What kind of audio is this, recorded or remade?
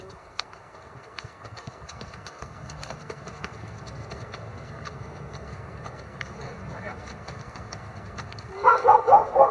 remade